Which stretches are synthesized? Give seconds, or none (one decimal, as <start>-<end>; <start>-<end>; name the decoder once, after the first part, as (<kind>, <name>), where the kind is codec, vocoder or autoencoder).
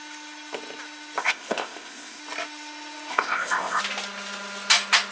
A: 1.2-2.2 (codec, ZipCodec); 3.1-3.8